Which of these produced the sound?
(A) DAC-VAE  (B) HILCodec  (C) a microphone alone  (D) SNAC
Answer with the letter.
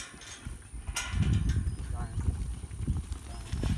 C